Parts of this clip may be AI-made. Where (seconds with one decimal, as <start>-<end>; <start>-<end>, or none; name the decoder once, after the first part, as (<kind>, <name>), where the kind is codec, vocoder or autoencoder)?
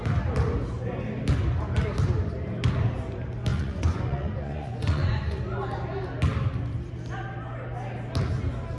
3.5-5.4 (vocoder, Vocos)